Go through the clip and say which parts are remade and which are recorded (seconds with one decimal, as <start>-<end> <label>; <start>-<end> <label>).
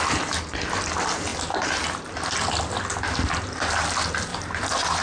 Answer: 0.0-4.3 recorded; 4.3-5.0 remade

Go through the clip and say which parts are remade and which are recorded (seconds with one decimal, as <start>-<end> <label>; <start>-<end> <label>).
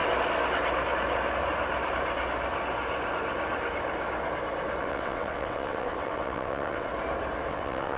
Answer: 0.0-4.8 recorded; 4.8-6.9 remade; 6.9-7.5 recorded; 7.5-8.0 remade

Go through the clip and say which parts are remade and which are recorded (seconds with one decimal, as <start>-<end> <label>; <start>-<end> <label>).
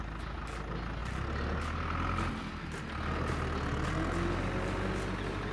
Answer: 0.0-5.5 recorded